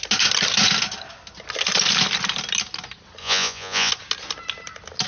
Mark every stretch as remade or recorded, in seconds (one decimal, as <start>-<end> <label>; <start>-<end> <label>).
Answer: 0.0-3.2 recorded; 3.2-3.9 remade; 3.9-5.1 recorded